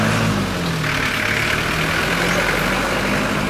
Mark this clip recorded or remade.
recorded